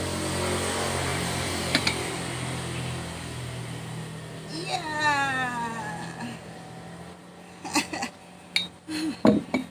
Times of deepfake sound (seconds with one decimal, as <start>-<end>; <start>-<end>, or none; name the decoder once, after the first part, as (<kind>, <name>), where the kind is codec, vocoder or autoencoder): 1.1-2.1 (vocoder, BigVGAN v2)